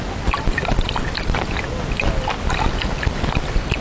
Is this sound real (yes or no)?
yes